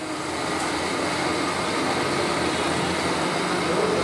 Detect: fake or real real